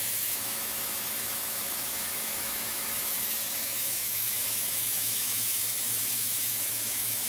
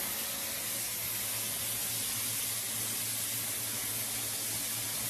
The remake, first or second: first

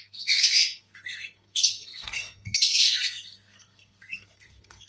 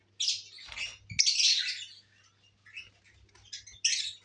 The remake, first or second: first